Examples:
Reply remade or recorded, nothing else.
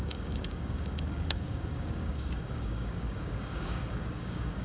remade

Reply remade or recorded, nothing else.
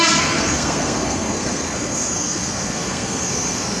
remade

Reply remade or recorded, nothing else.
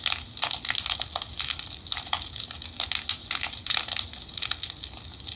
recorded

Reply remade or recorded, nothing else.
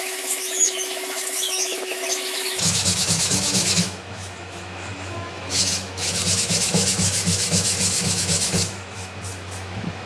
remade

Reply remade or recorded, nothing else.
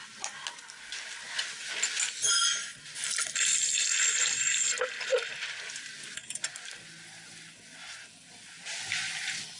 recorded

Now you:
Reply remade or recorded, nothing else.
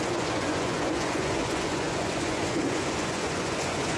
remade